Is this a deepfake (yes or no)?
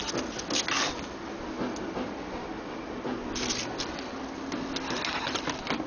no